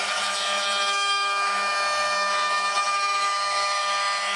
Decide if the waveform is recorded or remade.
remade